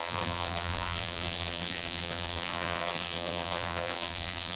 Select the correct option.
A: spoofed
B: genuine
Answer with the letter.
A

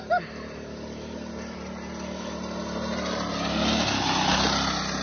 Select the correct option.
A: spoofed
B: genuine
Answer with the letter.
B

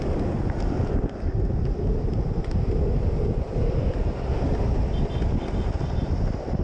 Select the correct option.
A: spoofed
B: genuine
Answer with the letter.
B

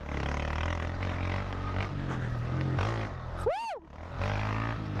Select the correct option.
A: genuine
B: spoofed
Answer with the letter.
A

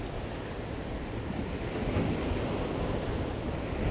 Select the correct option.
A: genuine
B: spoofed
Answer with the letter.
A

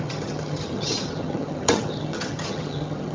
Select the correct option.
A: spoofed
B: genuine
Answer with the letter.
A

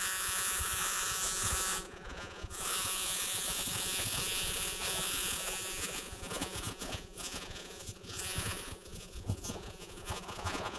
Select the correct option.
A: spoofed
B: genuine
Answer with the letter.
A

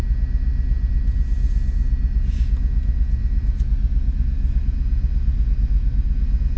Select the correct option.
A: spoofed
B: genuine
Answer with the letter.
B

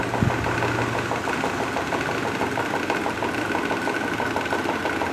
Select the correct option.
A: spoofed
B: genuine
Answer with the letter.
B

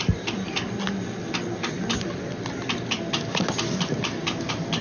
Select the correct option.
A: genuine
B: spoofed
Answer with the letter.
A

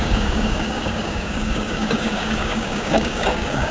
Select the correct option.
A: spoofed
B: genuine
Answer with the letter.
A